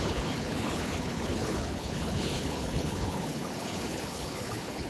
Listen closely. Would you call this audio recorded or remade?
remade